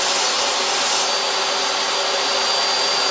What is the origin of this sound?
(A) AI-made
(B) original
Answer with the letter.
B